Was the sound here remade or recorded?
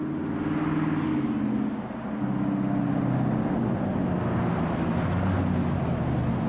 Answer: recorded